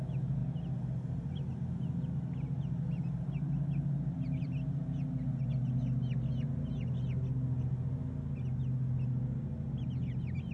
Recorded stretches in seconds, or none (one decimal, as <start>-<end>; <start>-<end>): 0.0-10.5